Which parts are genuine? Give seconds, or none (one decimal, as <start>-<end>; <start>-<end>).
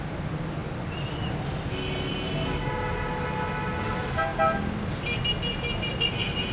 0.0-6.5